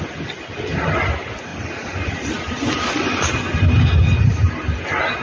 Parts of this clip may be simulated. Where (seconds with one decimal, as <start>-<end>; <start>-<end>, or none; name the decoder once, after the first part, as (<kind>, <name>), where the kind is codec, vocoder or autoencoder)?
1.5-3.3 (vocoder, BigVGAN v2)